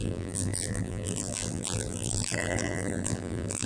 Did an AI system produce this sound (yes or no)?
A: yes